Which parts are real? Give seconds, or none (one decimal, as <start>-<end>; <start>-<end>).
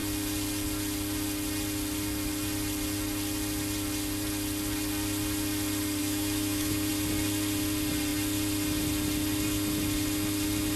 0.0-6.0; 6.9-10.8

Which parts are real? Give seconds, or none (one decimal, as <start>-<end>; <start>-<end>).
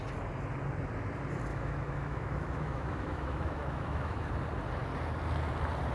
0.0-1.5; 4.3-5.9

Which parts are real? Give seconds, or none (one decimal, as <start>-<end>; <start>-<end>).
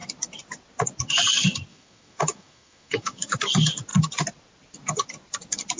0.0-1.7; 3.3-5.8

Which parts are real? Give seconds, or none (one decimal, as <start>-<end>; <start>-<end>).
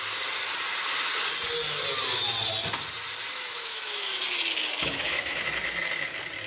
0.0-3.3; 4.1-4.8; 5.4-6.5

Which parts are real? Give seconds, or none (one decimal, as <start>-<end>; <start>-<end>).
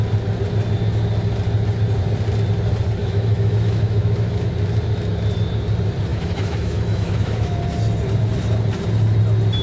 0.0-3.0; 4.5-6.1; 7.6-9.6